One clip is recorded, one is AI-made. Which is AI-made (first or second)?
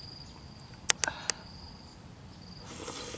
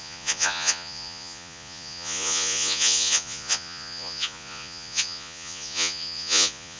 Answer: second